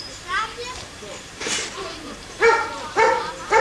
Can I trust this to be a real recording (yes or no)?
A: no